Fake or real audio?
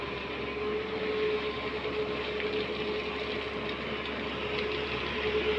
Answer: real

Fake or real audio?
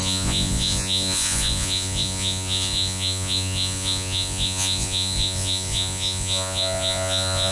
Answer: fake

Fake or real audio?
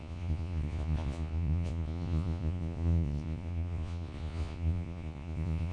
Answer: fake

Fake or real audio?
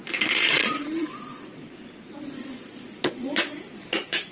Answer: fake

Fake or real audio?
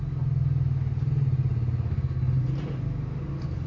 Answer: real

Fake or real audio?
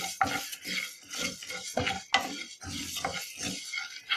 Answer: real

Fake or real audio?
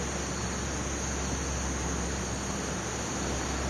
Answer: real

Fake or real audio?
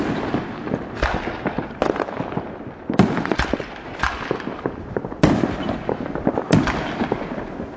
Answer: real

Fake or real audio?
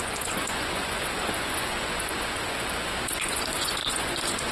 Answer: fake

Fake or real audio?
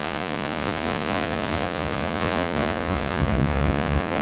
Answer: fake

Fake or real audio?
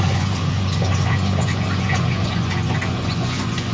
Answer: fake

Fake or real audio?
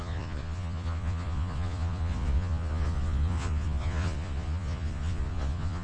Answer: fake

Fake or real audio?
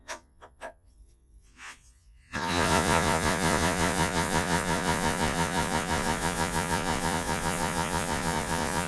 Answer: fake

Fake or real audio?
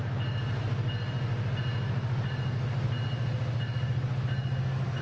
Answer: real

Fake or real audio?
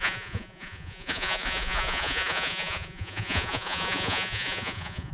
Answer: fake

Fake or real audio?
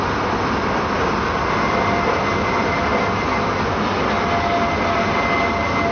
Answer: real